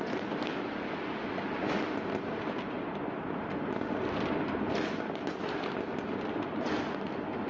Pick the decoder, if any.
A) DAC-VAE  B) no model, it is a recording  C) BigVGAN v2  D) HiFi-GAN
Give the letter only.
B